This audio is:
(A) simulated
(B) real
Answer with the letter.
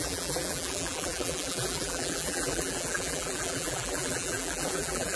A